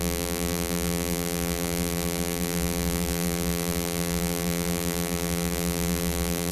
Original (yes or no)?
no